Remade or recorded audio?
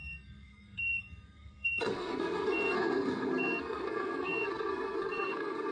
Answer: remade